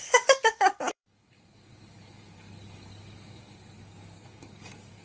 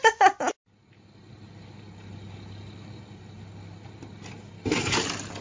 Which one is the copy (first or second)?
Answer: first